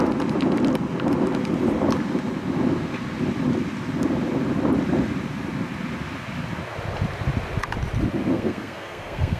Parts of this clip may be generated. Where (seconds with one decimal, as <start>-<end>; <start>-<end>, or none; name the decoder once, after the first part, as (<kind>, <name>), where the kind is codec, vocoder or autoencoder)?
8.3-9.4 (codec, SNAC)